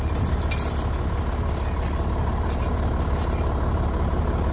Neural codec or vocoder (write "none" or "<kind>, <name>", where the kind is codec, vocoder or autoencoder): none